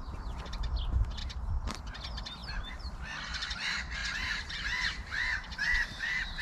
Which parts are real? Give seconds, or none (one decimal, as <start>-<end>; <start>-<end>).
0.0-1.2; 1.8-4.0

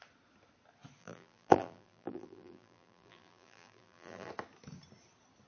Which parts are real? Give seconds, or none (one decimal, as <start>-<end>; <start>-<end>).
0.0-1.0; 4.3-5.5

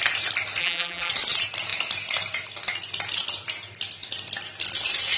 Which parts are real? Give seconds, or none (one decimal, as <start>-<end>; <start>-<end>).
0.0-0.6; 1.1-5.2